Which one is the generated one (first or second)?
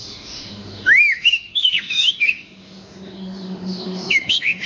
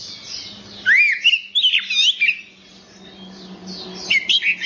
first